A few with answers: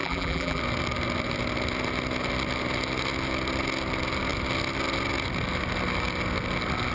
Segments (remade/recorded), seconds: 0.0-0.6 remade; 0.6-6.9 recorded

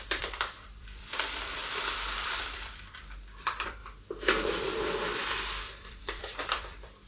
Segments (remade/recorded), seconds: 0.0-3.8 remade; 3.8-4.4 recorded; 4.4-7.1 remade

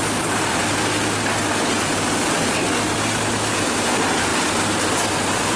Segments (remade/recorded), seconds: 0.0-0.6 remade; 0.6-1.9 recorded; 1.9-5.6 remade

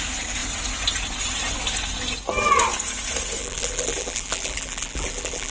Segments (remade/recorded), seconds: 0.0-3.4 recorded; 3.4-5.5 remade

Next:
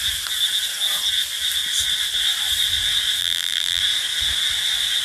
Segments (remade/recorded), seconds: 0.0-3.2 recorded; 3.2-3.8 remade; 3.8-5.0 recorded

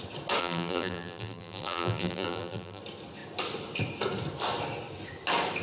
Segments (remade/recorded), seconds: 0.0-0.4 recorded; 0.4-2.8 remade; 2.8-5.6 recorded

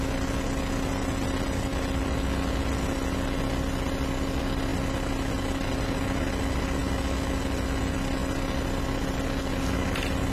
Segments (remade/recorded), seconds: 0.0-10.3 recorded